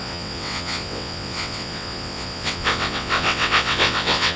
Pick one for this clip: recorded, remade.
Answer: remade